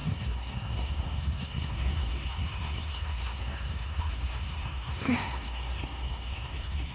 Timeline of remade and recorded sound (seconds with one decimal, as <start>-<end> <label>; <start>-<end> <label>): 0.0-6.9 remade

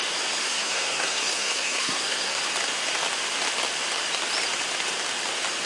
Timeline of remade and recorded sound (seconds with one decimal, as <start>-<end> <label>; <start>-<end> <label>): 0.0-0.4 recorded; 0.4-2.4 remade; 2.4-5.7 recorded

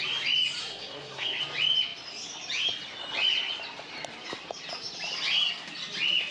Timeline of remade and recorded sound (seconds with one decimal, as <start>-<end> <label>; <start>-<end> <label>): 0.0-0.6 recorded; 0.6-1.4 remade; 1.4-6.3 recorded

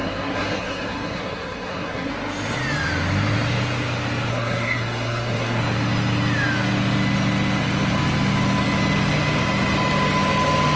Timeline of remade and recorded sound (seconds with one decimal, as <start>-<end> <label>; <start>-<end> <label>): 0.0-2.1 remade; 2.1-4.3 recorded; 4.3-5.6 remade; 5.6-10.8 recorded

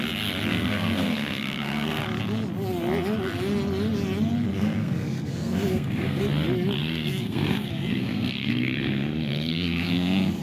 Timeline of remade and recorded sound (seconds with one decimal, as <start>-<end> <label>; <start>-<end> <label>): 0.0-0.5 recorded; 0.5-2.0 remade; 2.0-4.5 recorded; 4.5-6.2 remade; 6.2-6.8 recorded; 6.8-10.4 remade

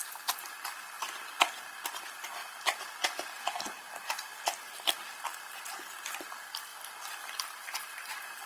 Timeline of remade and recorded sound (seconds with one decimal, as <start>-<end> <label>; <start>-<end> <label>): 0.0-8.5 recorded

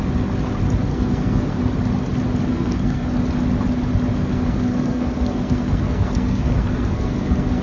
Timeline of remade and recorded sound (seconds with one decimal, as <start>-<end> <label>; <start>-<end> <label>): 0.0-0.9 recorded; 0.9-1.6 remade; 1.6-2.5 recorded; 2.5-3.1 remade; 3.1-4.1 recorded; 4.1-7.6 remade